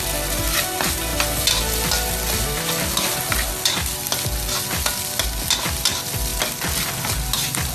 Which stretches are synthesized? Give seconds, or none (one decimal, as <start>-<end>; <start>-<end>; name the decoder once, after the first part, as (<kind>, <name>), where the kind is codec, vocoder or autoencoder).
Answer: none